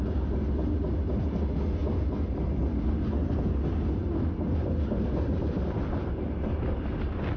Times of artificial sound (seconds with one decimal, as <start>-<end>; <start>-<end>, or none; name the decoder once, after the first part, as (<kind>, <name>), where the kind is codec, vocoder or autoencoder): 1.8-2.9 (vocoder, BigVGAN v2); 4.0-6.5